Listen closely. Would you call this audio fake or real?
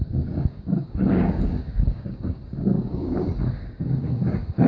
fake